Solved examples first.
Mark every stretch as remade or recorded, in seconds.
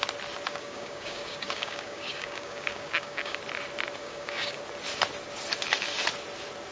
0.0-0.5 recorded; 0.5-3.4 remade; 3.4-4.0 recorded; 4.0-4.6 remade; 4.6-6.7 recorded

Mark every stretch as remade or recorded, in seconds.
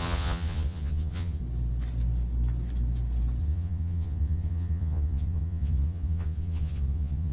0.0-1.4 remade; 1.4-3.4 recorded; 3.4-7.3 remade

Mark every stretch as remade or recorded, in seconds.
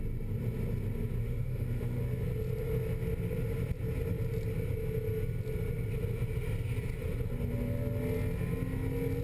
0.0-1.2 recorded; 1.2-2.0 remade; 2.0-9.2 recorded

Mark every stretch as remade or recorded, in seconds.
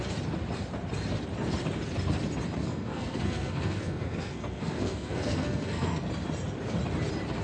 0.0-2.6 recorded; 2.6-6.1 remade; 6.1-7.4 recorded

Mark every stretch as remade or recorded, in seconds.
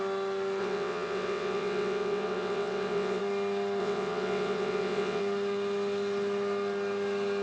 0.0-0.6 recorded; 0.6-3.2 remade; 3.2-3.8 recorded; 3.8-5.2 remade; 5.2-7.4 recorded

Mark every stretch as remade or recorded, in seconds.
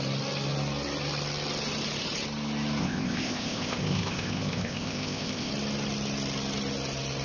0.0-2.8 recorded; 2.8-5.5 remade; 5.5-7.2 recorded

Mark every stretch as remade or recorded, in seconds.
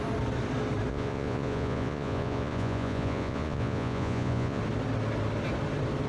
0.0-0.9 recorded; 0.9-4.6 remade; 4.6-6.1 recorded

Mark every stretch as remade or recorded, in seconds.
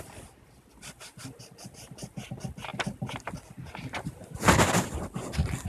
0.0-5.7 recorded